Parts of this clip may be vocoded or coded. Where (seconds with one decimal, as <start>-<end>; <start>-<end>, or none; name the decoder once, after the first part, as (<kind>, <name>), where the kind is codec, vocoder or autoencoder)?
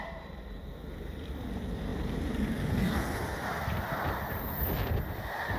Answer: 0.0-5.6 (vocoder, BigVGAN v2)